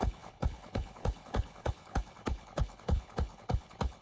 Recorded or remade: remade